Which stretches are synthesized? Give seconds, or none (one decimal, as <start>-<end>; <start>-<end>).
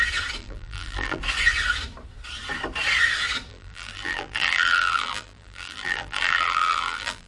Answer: 0.4-1.2; 3.5-7.3